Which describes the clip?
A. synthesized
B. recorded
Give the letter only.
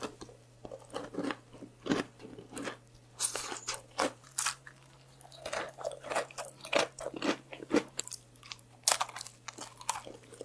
B